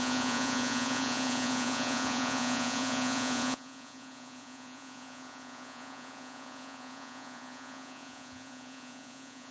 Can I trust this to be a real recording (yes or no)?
no